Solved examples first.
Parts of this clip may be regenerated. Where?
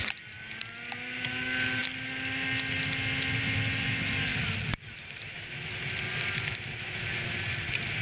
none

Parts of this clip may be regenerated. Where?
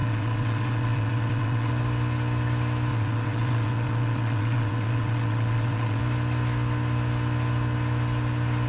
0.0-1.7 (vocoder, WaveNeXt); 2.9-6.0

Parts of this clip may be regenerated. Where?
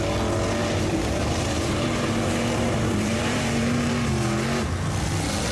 0.6-3.9 (vocoder, BigVGAN v2)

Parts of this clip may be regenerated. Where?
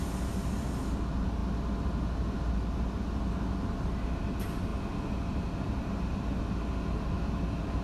none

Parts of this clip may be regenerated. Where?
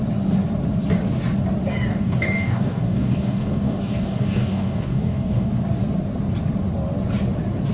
1.9-5.5 (codec, DAC)